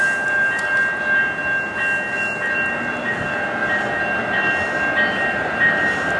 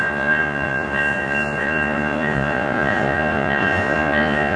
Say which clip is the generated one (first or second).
second